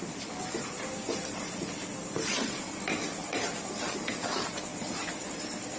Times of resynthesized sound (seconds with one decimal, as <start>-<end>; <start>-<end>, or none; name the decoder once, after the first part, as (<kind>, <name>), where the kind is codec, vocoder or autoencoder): none